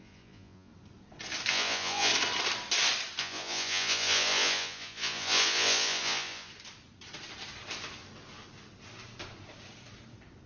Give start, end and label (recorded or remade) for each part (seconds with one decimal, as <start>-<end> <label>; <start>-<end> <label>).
0.0-0.7 remade; 0.7-1.5 recorded; 1.5-2.1 remade; 2.1-3.2 recorded; 3.2-6.5 remade; 6.5-10.5 recorded